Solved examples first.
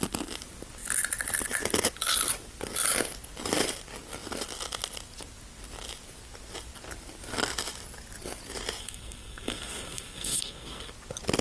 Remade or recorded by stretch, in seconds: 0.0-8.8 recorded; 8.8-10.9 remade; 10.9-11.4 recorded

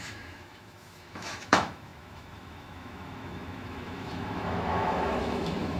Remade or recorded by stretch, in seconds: 0.0-5.8 remade

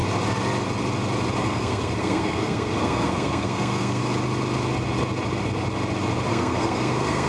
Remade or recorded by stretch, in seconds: 0.0-1.4 recorded; 1.4-4.0 remade; 4.0-6.3 recorded; 6.3-7.3 remade

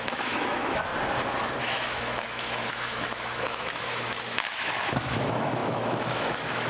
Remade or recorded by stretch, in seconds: 0.0-0.9 remade; 0.9-1.6 recorded; 1.6-6.7 remade

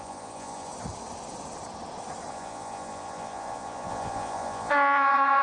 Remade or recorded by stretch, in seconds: 0.0-0.7 remade; 0.7-2.3 recorded; 2.3-5.4 remade

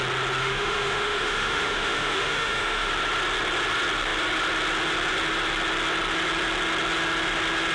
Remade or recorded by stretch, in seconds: 0.0-0.4 recorded; 0.4-2.9 remade; 2.9-7.7 recorded